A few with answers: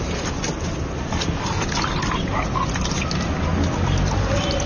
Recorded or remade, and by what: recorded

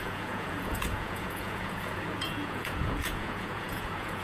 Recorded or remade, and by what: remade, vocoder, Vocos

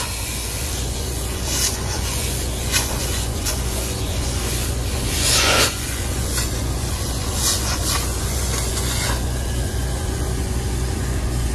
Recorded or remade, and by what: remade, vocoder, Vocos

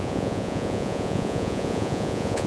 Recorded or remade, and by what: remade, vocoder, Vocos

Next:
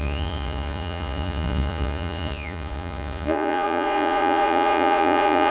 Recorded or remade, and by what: remade, vocoder, Vocos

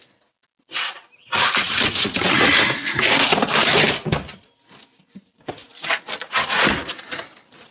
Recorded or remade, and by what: recorded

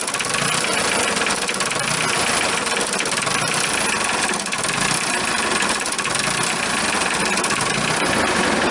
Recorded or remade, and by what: recorded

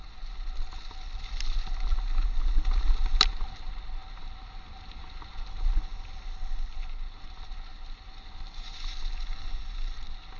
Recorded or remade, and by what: recorded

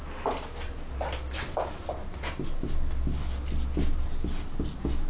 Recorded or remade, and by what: recorded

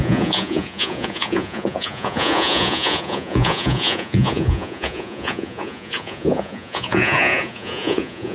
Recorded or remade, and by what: remade, vocoder, Vocos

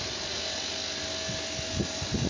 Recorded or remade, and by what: recorded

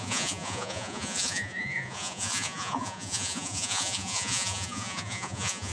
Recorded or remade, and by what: remade, vocoder, Vocos